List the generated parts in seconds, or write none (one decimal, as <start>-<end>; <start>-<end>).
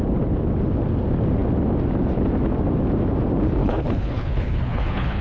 3.6-5.2